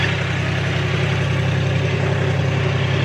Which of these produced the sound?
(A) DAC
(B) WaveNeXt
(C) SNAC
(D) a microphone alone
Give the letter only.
D